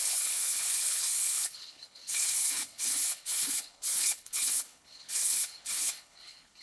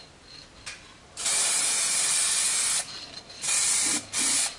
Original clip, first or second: second